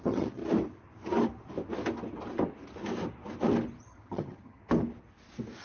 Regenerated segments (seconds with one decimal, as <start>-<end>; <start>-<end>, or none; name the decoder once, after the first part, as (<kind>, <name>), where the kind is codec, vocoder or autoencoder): 0.0-0.4 (vocoder, HiFi-GAN); 3.8-4.6